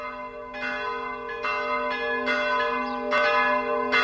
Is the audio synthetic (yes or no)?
no